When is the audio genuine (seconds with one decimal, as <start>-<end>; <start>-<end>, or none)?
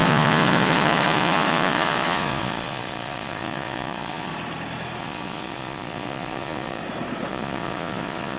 4.3-5.0; 6.8-7.3